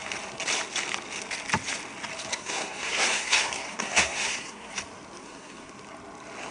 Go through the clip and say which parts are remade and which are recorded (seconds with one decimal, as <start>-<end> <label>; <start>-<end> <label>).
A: 0.0-2.3 recorded; 2.3-4.7 remade; 4.7-5.2 recorded; 5.2-5.7 remade; 5.7-6.5 recorded